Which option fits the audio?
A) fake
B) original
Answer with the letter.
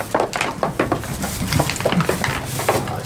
B